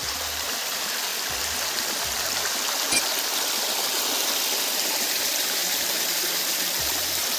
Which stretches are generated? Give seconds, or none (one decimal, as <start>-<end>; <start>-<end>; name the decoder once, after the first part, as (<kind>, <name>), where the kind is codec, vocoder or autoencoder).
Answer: 0.0-1.1 (vocoder, BigVGAN v2); 4.9-7.4